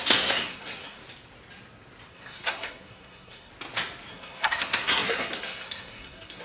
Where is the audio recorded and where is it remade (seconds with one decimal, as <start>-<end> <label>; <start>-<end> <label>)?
0.0-1.0 remade; 1.0-2.1 recorded; 2.1-3.5 remade; 3.5-4.1 recorded; 4.1-6.4 remade